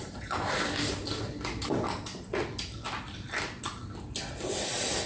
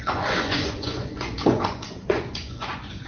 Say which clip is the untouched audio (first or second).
first